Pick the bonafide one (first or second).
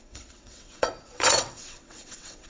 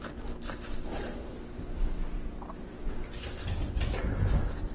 second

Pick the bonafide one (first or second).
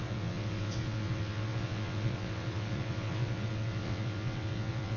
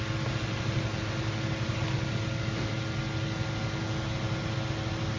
second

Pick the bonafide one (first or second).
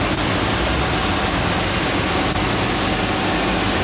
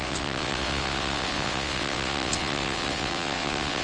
first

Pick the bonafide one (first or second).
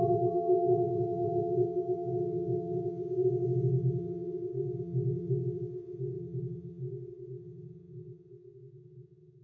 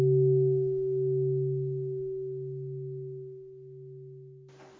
second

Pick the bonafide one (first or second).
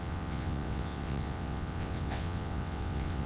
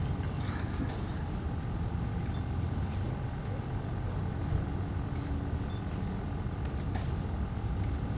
second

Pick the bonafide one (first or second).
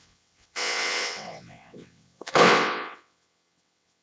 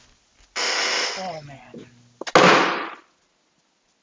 second